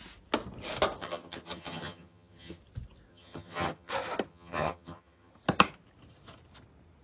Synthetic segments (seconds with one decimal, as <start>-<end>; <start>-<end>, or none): 1.0-2.6; 3.1-3.9; 4.3-5.3